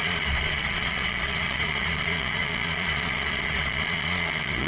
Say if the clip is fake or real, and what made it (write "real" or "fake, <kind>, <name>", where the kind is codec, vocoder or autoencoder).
fake, vocoder, Vocos